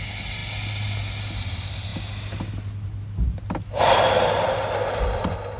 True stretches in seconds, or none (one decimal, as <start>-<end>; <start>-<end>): 0.0-5.6